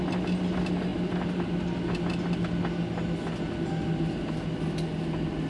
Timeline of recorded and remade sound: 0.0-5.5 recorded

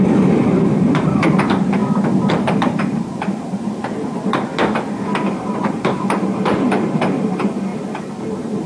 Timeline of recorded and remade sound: 0.0-1.8 remade; 1.8-2.3 recorded; 2.3-4.5 remade; 4.5-5.4 recorded; 5.4-7.7 remade; 7.7-8.2 recorded; 8.2-8.7 remade